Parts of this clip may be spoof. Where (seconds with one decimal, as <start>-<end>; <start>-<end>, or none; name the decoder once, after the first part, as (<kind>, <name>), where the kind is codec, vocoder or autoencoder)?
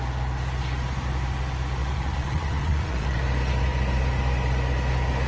1.8-3.2 (vocoder, Vocos)